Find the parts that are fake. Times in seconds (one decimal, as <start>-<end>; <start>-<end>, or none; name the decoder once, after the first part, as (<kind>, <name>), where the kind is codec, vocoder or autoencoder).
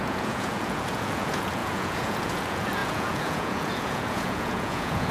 0.0-5.1 (vocoder, Vocos)